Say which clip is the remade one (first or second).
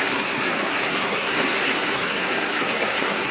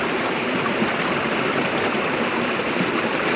first